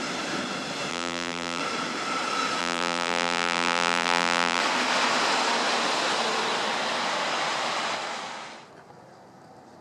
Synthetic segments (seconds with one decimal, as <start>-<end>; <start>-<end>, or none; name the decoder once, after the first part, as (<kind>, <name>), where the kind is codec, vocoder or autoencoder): 0.9-1.6 (vocoder, BigVGAN v2); 2.6-4.6